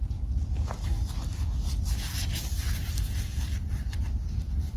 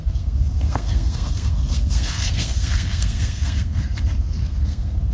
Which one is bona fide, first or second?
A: first